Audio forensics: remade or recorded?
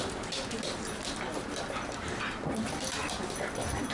recorded